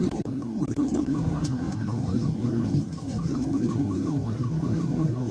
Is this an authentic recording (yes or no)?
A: no